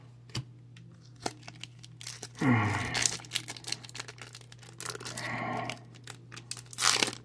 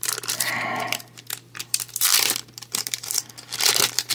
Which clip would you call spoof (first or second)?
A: second